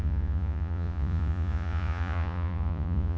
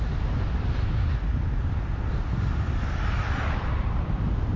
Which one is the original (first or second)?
second